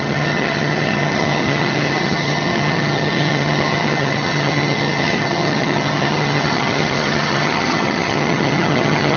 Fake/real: fake